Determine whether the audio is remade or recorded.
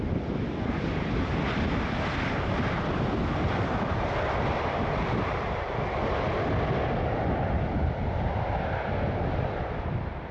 recorded